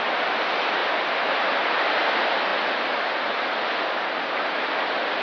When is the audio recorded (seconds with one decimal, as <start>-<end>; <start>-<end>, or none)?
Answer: 0.0-0.8; 1.6-5.2